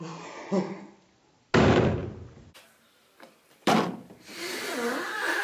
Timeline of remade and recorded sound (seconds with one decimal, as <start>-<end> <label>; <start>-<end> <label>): 0.0-2.0 recorded; 2.0-5.4 remade